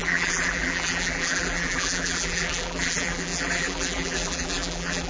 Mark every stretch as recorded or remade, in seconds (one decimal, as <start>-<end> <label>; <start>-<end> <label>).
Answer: 0.0-5.1 remade